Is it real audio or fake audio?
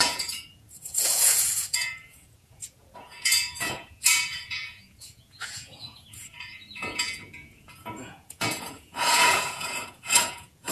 fake